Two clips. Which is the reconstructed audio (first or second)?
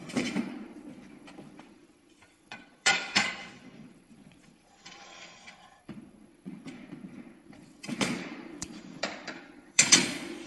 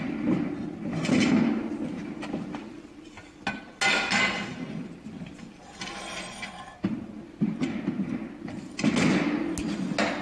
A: first